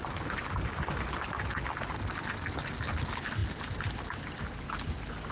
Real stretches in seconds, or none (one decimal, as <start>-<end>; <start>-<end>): 0.0-5.3